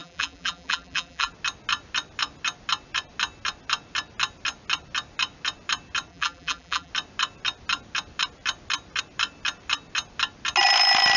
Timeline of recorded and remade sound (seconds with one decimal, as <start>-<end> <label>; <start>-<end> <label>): 0.0-1.3 remade; 1.3-6.1 recorded; 6.1-6.9 remade; 6.9-11.2 recorded